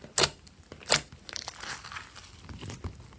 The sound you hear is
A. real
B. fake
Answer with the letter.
A